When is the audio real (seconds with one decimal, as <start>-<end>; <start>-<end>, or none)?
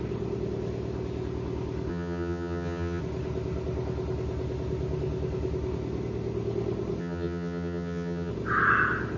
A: 0.0-1.9; 3.0-7.0; 8.3-9.2